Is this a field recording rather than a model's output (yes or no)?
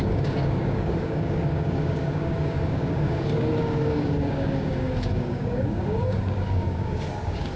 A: no